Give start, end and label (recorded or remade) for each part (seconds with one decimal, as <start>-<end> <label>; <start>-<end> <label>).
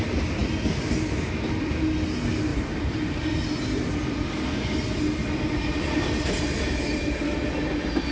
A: 0.0-2.5 recorded; 2.5-3.3 remade; 3.3-8.1 recorded